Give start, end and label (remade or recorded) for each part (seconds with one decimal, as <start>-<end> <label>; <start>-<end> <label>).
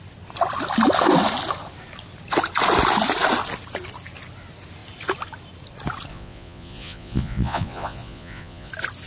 0.0-6.1 recorded; 6.1-8.7 remade; 8.7-9.1 recorded